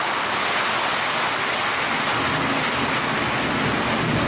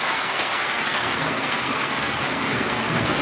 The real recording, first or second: first